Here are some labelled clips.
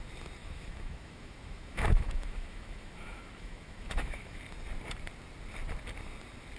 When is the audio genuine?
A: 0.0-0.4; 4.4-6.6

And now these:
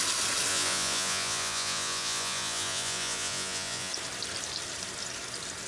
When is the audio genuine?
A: 0.0-0.5; 3.9-5.7

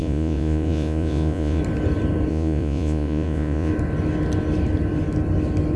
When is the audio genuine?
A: 1.6-2.3; 3.7-5.8